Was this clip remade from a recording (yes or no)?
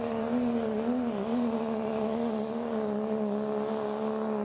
no